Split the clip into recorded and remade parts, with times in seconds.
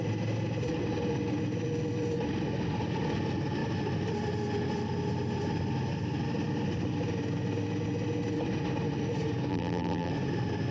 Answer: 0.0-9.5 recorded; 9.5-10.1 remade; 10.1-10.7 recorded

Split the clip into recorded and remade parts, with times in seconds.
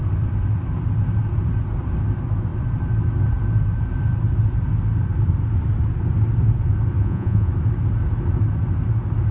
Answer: 0.0-7.0 recorded; 7.0-7.5 remade; 7.5-9.3 recorded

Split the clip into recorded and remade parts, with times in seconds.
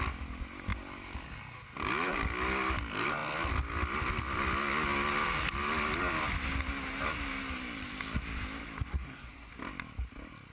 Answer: 0.0-8.9 recorded; 8.9-9.5 remade; 9.5-10.5 recorded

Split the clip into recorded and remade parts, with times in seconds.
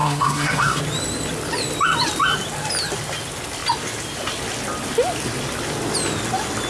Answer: 0.0-0.8 remade; 0.8-6.7 recorded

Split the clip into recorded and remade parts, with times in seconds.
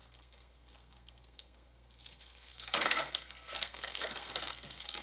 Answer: 0.0-5.0 remade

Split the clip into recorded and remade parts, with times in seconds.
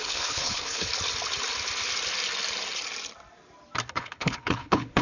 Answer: 0.0-0.9 remade; 0.9-3.9 recorded; 3.9-5.0 remade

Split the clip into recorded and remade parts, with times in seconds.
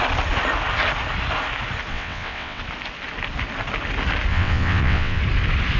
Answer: 0.0-1.9 recorded; 1.9-2.6 remade; 2.6-4.3 recorded; 4.3-5.2 remade; 5.2-5.8 recorded